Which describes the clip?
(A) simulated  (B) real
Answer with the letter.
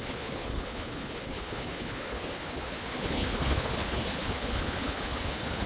A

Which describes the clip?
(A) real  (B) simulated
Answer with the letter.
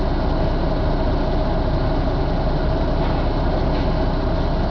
A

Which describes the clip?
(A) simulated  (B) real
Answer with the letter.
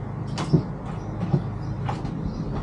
B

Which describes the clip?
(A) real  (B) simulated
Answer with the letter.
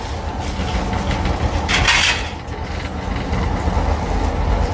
A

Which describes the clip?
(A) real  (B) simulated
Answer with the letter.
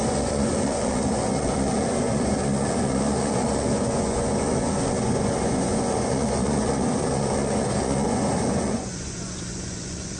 B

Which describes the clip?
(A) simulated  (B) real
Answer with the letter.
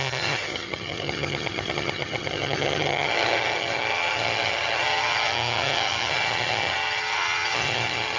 A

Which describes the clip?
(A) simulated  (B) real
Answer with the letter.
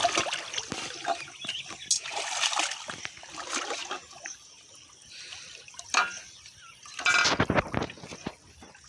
B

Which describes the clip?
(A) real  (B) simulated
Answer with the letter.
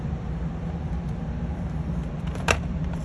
B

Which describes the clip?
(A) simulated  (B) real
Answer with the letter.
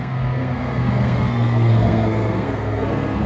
A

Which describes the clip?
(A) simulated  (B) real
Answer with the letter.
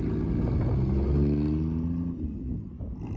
B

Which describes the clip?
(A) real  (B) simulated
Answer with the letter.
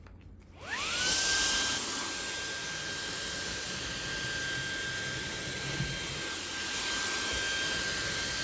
A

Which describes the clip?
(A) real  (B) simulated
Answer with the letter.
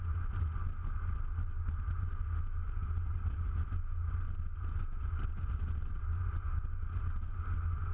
A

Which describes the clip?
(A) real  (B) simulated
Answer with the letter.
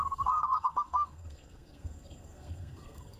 B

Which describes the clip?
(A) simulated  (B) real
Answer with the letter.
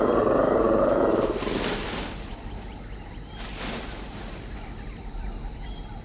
B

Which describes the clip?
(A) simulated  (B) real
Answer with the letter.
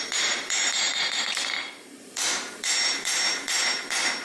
A